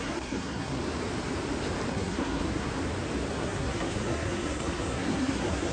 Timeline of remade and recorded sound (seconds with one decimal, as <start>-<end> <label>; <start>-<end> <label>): 0.0-0.8 remade; 0.8-1.9 recorded; 1.9-2.7 remade; 2.7-3.3 recorded; 3.3-5.7 remade